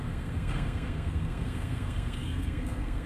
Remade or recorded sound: remade